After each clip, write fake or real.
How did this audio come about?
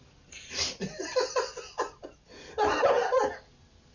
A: real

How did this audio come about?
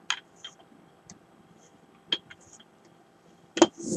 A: real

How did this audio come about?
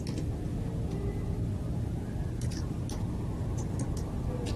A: real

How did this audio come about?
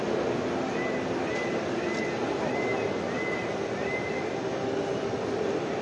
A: real